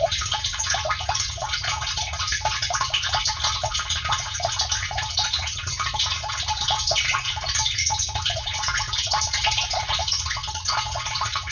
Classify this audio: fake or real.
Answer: fake